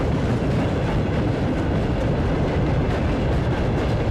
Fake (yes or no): no